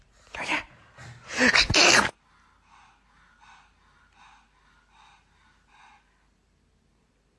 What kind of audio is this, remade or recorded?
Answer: recorded